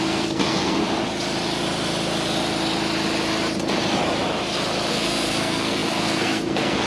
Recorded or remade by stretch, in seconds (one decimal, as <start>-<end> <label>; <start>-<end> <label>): 0.0-0.8 remade; 0.8-4.9 recorded; 4.9-6.9 remade